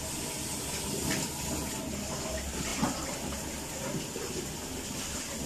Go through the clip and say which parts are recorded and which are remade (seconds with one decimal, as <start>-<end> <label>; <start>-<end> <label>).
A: 0.0-5.5 recorded